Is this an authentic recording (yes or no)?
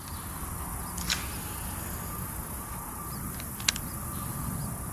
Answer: yes